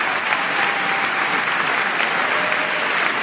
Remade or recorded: recorded